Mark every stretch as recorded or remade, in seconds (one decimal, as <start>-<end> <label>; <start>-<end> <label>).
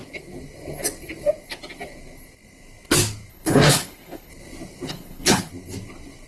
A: 0.0-3.3 recorded; 3.3-4.3 remade; 4.3-4.9 recorded; 4.9-5.5 remade; 5.5-6.3 recorded